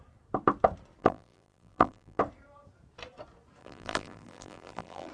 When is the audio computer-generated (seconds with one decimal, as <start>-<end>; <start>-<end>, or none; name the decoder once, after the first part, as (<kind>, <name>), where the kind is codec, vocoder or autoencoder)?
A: 1.0-2.2 (vocoder, BigVGAN v2); 3.6-5.1